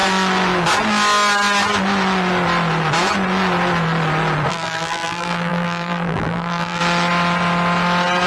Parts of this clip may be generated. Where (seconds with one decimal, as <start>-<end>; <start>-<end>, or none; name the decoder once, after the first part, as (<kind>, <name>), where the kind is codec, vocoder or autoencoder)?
4.5-6.8 (vocoder, BigVGAN v2)